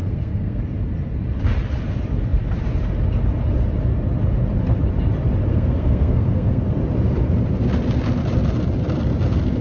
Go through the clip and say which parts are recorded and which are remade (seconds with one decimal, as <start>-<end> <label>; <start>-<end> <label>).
0.0-0.6 remade; 0.6-5.5 recorded; 5.5-6.6 remade; 6.6-9.6 recorded